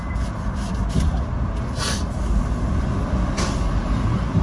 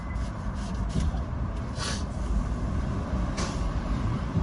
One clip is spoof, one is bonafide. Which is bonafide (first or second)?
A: first